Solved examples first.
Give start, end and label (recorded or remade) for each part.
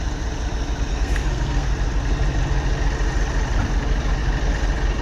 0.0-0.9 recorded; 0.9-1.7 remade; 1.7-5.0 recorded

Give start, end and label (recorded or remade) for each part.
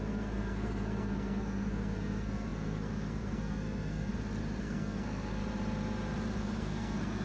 0.0-4.1 remade; 4.1-4.6 recorded; 4.6-5.4 remade; 5.4-6.4 recorded; 6.4-7.2 remade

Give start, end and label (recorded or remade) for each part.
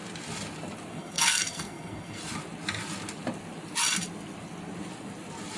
0.0-0.9 recorded; 0.9-2.2 remade; 2.2-5.6 recorded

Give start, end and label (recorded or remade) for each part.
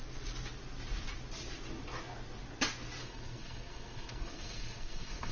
0.0-3.0 recorded; 3.0-5.3 remade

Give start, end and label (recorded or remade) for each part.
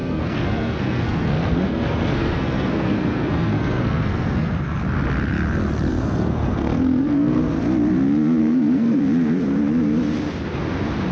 0.0-4.8 remade; 4.8-5.9 recorded; 5.9-7.4 remade; 7.4-8.4 recorded; 8.4-9.0 remade; 9.0-11.1 recorded